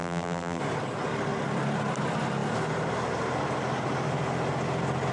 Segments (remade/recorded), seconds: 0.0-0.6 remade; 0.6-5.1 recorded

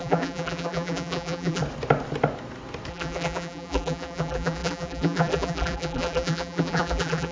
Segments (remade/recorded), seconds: 0.0-1.6 remade; 1.6-2.9 recorded; 2.9-7.3 remade

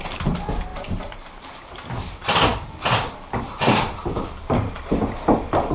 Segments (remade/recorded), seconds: 0.0-0.7 recorded; 0.7-1.6 remade; 1.6-5.7 recorded

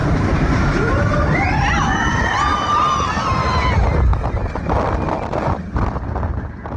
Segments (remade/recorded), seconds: 0.0-1.6 remade; 1.6-2.5 recorded; 2.5-3.3 remade; 3.3-6.8 recorded

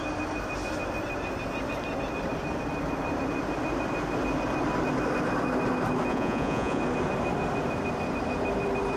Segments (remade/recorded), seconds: 0.0-6.1 recorded; 6.1-6.8 remade; 6.8-9.0 recorded

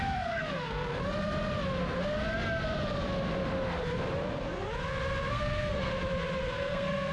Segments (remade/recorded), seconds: 0.0-1.0 remade; 1.0-5.3 recorded; 5.3-5.9 remade; 5.9-6.5 recorded; 6.5-7.1 remade